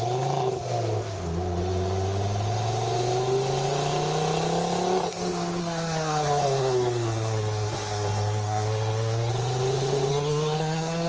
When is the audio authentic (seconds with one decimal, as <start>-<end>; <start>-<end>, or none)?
0.0-5.6; 9.3-10.1